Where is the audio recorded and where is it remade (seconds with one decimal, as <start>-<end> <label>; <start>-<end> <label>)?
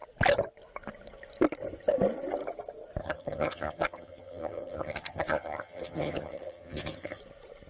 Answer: 0.0-3.0 recorded; 3.0-7.2 remade; 7.2-7.7 recorded